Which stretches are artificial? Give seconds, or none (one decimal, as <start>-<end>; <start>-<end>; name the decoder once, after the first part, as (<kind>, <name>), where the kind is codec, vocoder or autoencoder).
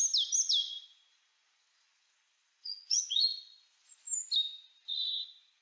0.6-4.0 (vocoder, Vocos); 4.8-5.6